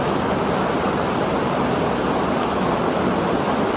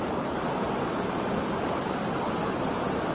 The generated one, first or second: second